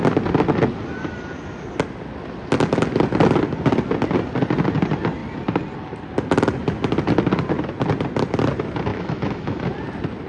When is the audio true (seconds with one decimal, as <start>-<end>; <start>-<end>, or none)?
0.0-8.9; 9.6-10.3